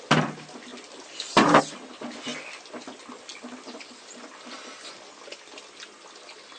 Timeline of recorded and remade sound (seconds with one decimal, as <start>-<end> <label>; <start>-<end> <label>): 0.0-0.7 recorded; 0.7-1.6 remade; 1.6-6.6 recorded